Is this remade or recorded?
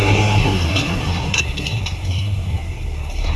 remade